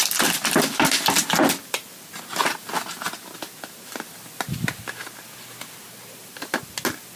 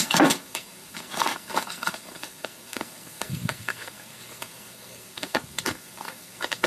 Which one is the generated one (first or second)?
second